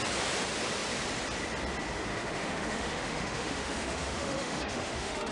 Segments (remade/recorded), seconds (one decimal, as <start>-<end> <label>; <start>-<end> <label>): 0.0-2.1 recorded; 2.1-5.3 remade